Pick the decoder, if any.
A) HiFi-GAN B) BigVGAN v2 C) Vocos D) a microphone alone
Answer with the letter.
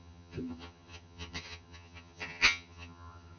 A